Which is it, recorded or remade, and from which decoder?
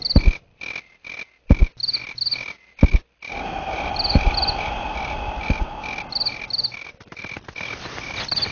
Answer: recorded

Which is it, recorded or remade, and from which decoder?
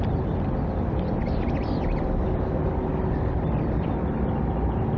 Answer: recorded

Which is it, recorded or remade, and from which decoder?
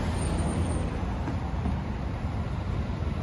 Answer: recorded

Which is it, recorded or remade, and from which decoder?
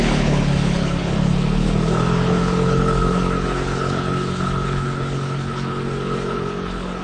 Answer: remade, codec, HILCodec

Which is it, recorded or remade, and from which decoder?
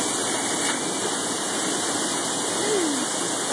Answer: recorded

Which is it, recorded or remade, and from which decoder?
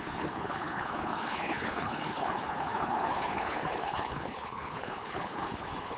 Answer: remade, codec, HILCodec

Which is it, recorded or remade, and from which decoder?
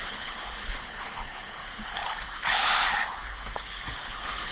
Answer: remade, codec, HILCodec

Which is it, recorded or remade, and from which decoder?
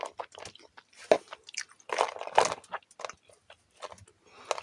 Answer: recorded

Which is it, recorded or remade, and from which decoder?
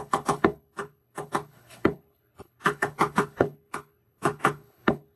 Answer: remade, codec, HILCodec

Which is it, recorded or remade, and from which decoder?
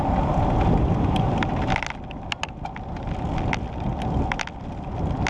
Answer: recorded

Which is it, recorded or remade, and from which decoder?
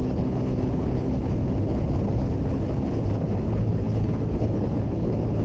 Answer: remade, codec, HILCodec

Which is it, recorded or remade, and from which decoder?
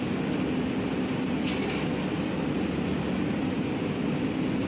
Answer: recorded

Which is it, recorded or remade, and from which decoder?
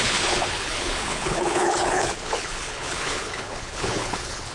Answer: remade, codec, HILCodec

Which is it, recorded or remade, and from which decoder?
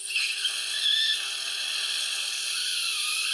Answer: recorded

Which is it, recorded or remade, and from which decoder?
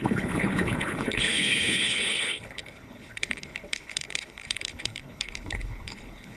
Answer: remade, codec, HILCodec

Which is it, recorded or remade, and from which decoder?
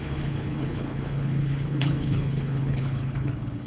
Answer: remade, codec, HILCodec